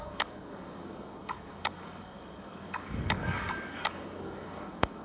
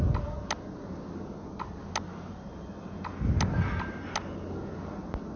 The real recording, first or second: second